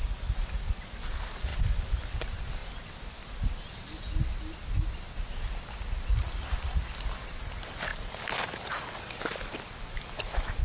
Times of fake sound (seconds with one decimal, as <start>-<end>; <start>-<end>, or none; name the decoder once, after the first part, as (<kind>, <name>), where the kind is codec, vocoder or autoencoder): none